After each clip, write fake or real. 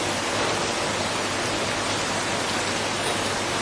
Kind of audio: real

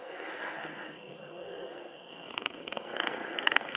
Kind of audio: fake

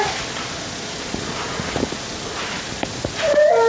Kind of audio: real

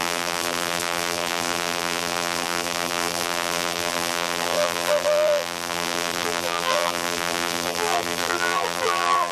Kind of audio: fake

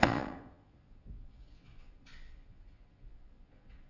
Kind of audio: fake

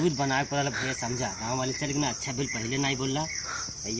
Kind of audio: real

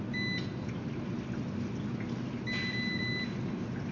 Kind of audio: real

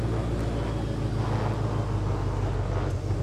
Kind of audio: real